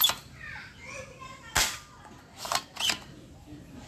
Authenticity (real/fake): real